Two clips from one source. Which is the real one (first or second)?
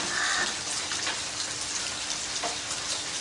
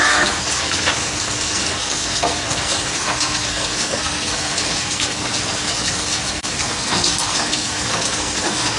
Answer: first